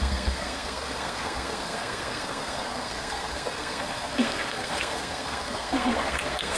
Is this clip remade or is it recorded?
remade